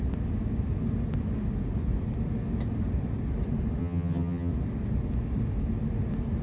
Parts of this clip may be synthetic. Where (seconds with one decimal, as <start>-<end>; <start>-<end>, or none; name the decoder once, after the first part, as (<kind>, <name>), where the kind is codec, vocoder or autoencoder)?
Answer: 3.8-4.5 (vocoder, HiFi-GAN)